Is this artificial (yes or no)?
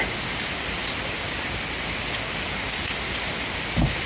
no